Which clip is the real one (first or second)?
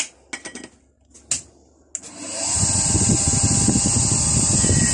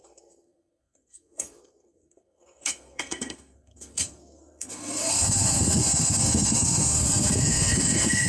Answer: first